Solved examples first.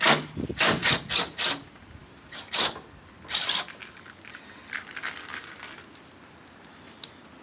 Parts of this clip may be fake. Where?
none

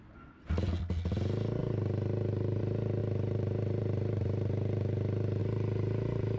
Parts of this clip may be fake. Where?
1.6-2.6 (vocoder, BigVGAN v2); 3.0-5.4

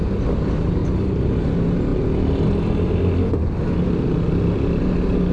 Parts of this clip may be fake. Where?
none

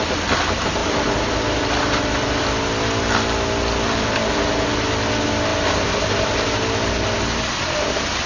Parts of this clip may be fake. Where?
none

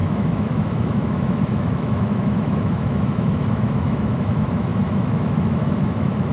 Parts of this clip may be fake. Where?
0.0-6.3 (autoencoder, DAC-VAE)

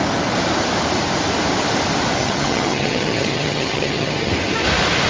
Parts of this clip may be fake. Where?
2.2-4.3 (vocoder, HiFi-GAN)

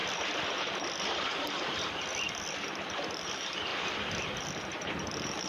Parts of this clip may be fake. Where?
none